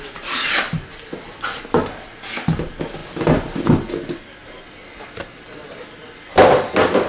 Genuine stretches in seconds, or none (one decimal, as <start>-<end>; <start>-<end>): 0.0-7.1